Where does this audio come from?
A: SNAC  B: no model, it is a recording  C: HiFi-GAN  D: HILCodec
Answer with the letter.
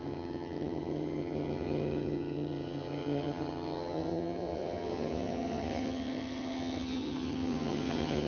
C